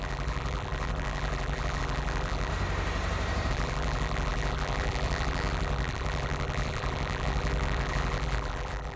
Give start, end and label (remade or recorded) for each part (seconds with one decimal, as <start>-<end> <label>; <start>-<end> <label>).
0.0-2.5 remade; 2.5-3.5 recorded; 3.5-9.0 remade